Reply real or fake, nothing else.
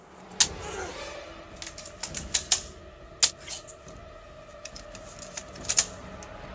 real